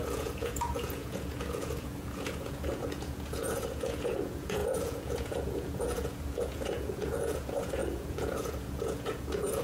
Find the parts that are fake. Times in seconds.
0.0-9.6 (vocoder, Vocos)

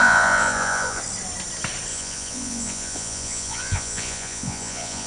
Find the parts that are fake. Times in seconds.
0.0-1.0 (vocoder, Vocos); 1.9-5.1